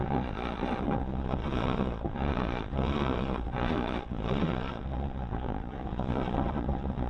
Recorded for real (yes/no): no